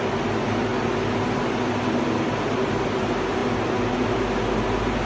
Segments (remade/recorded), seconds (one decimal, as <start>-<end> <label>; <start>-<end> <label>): 0.0-5.1 recorded